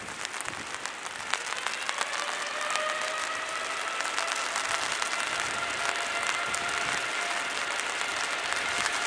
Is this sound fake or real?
real